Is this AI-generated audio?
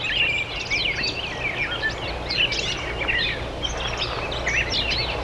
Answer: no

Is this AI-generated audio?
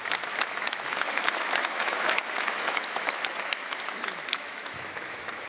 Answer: yes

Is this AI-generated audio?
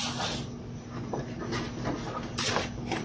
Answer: no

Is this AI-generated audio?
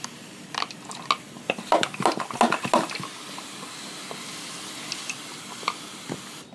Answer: no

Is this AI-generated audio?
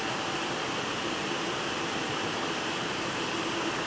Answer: yes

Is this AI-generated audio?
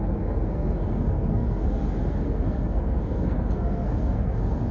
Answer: yes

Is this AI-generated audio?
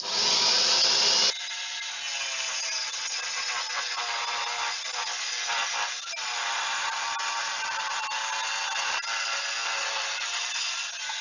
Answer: no